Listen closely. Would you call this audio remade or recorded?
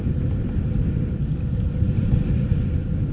recorded